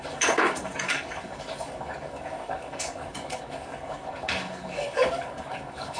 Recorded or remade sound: remade